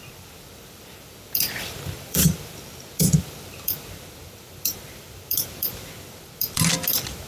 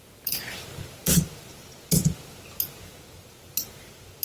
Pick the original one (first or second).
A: second